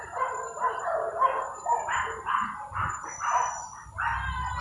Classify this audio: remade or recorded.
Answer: recorded